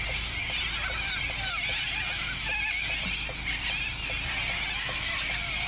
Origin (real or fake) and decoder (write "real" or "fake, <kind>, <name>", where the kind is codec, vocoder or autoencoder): real